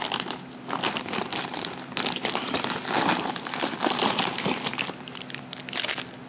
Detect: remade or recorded recorded